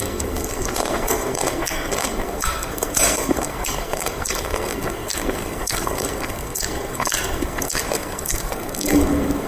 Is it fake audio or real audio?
fake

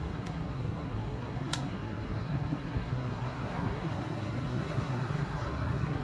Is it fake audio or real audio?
fake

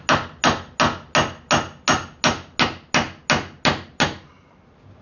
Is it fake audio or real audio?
real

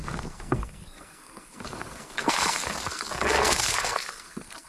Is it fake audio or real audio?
fake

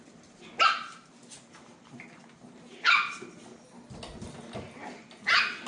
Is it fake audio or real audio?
real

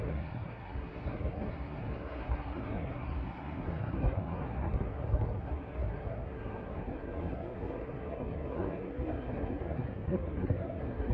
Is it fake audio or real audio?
fake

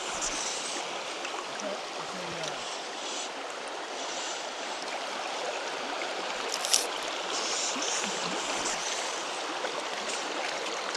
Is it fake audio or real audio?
real